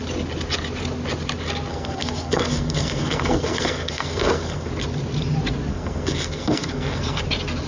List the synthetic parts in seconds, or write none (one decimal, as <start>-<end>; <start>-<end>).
1.7-4.7; 5.7-7.2